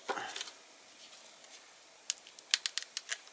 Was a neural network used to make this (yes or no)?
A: no